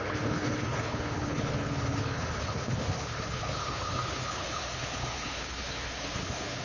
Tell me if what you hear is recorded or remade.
remade